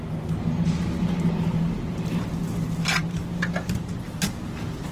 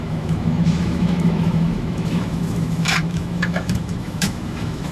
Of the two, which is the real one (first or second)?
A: first